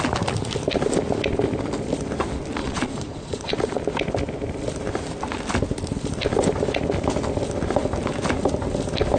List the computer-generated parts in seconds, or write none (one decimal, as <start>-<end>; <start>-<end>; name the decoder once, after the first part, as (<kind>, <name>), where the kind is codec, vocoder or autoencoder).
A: 2.6-3.8 (vocoder, Vocos)